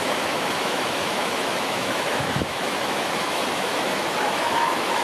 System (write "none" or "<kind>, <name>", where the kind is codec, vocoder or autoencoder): autoencoder, DAC-VAE